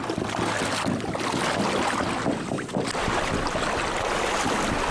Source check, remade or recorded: recorded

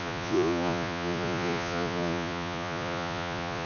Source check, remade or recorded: remade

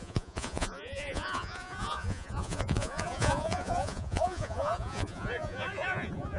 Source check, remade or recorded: remade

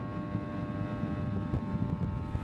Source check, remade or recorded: recorded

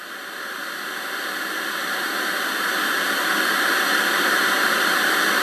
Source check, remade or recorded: recorded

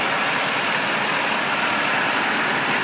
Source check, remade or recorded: recorded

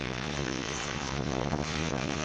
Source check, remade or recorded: remade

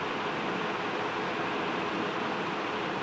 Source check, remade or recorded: recorded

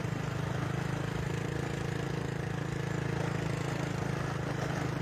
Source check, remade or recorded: recorded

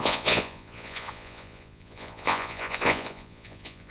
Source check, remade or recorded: remade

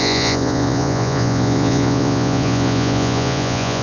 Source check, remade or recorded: remade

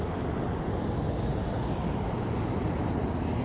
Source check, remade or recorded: recorded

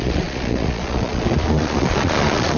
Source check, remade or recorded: remade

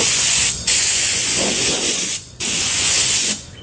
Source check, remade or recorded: remade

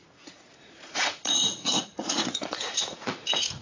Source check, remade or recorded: remade